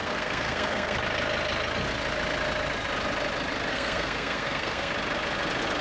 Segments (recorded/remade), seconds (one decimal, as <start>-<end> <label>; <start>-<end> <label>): 0.0-1.0 remade; 1.0-3.7 recorded; 3.7-4.9 remade; 4.9-5.8 recorded